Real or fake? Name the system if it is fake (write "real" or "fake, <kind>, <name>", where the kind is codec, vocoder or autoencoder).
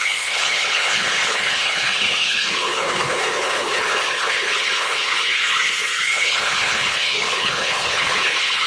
fake, codec, HILCodec